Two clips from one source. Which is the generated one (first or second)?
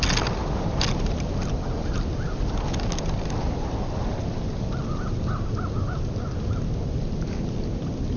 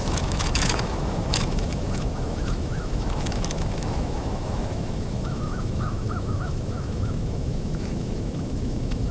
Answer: second